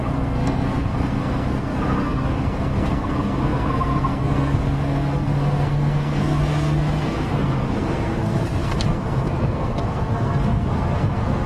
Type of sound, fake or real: fake